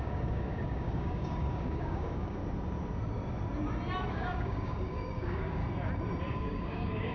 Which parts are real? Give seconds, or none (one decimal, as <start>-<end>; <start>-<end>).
2.4-4.1; 5.6-6.3

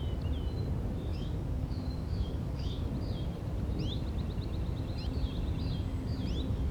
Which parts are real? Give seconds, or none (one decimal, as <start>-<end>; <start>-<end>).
0.0-1.1; 2.9-6.7

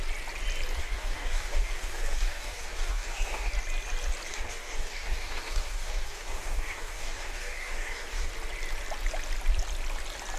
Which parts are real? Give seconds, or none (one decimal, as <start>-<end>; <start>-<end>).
0.0-0.8; 3.5-4.3; 8.3-10.4